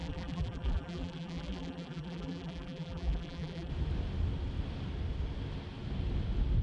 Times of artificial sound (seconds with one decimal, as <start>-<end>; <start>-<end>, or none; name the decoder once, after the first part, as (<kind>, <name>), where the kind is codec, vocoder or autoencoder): 0.0-3.7 (vocoder, BigVGAN v2)